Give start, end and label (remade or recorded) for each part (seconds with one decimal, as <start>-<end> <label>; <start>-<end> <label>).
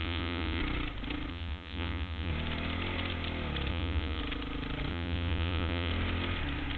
0.0-0.6 remade; 0.6-1.3 recorded; 1.3-2.3 remade; 2.3-3.7 recorded; 3.7-4.2 remade; 4.2-4.9 recorded; 4.9-5.9 remade; 5.9-6.8 recorded